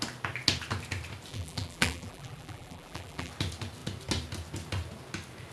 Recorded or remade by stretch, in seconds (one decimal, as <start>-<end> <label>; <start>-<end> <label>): 0.0-1.3 recorded; 1.3-3.3 remade; 3.3-5.5 recorded